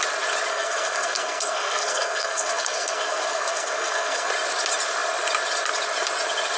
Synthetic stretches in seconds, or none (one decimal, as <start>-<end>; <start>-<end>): 0.5-4.3